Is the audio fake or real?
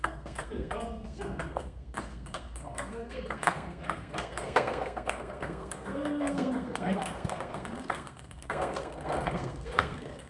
fake